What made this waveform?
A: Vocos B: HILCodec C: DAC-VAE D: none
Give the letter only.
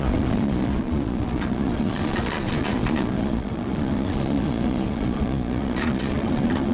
A